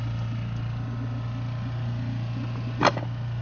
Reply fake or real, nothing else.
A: real